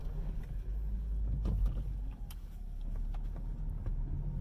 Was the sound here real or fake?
real